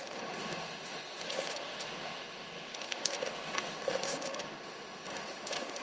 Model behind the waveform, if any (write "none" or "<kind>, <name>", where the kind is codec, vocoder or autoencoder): autoencoder, DAC-VAE